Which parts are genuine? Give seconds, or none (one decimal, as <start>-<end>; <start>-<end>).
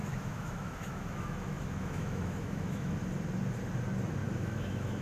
3.0-4.2